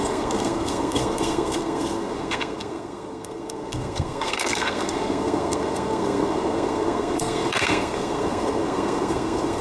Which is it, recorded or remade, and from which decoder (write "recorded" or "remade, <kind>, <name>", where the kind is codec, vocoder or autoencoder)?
remade, codec, SNAC